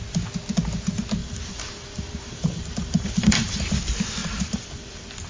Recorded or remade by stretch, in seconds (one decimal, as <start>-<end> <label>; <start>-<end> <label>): 0.0-1.2 recorded; 1.2-3.6 remade; 3.6-4.2 recorded; 4.2-5.3 remade